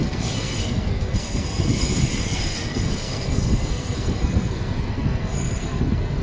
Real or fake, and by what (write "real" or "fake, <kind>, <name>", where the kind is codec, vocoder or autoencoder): fake, codec, SNAC